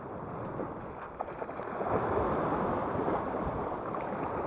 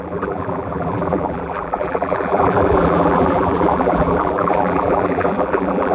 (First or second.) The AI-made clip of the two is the second